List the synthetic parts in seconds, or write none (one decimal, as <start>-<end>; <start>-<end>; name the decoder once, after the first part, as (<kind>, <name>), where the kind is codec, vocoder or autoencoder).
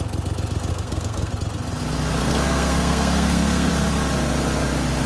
0.7-1.3 (codec, SNAC); 2.2-3.7